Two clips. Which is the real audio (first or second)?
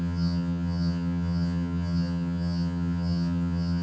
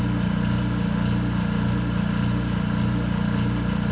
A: second